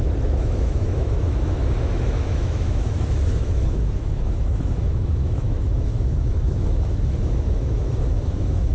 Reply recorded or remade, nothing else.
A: remade